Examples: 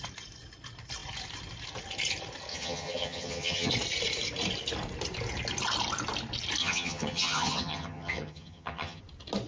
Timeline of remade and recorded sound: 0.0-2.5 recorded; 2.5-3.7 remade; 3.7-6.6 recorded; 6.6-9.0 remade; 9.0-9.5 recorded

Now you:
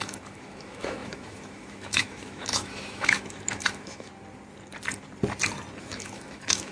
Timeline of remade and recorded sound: 0.0-4.1 remade; 4.1-5.8 recorded; 5.8-6.7 remade

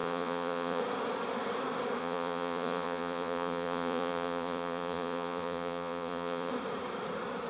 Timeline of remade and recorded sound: 0.0-0.8 remade; 0.8-2.0 recorded; 2.0-6.5 remade; 6.5-7.5 recorded

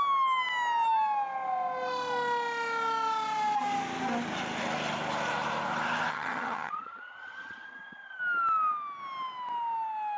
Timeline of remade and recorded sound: 0.0-6.1 recorded; 6.1-8.2 remade; 8.2-10.2 recorded

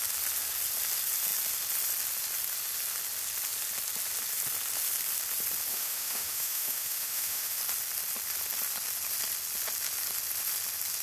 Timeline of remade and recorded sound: 0.0-5.7 recorded; 5.7-7.6 remade; 7.6-11.0 recorded